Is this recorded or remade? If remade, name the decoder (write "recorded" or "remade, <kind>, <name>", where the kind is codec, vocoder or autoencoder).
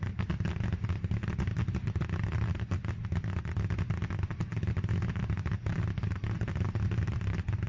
recorded